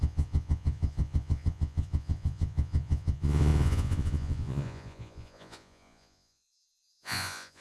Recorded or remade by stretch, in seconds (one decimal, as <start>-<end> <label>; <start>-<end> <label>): 0.0-7.6 remade